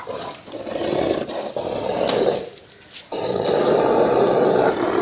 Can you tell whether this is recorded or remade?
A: recorded